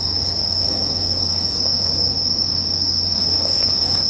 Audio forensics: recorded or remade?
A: remade